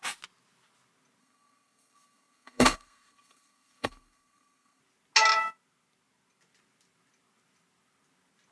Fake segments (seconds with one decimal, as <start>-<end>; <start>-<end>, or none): 1.2-4.8